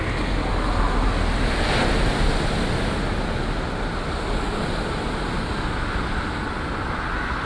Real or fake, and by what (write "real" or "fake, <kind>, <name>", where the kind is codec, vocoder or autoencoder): real